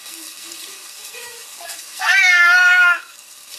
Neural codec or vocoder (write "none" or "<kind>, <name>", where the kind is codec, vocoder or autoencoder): codec, SNAC